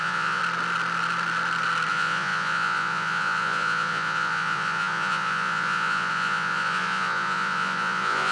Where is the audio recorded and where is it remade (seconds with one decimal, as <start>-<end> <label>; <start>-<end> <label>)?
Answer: 0.0-0.4 remade; 0.4-1.9 recorded; 1.9-8.3 remade